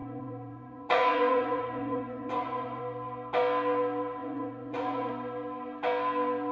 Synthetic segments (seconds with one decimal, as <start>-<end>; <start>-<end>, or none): 0.0-2.8; 4.2-5.1